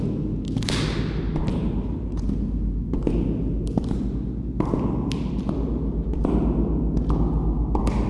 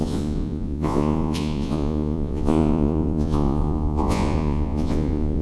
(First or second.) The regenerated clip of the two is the second